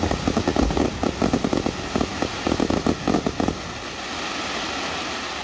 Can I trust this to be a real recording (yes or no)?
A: yes